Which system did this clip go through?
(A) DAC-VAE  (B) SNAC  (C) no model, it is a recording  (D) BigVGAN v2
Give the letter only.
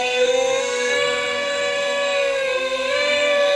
B